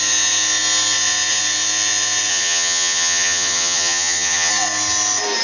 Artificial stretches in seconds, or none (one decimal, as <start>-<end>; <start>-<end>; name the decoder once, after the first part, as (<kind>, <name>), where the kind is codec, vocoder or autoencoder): 2.3-4.5 (vocoder, HiFi-GAN)